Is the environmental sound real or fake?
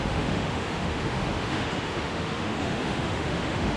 fake